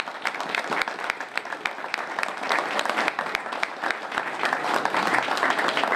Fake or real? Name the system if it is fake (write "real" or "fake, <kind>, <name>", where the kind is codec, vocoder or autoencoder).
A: real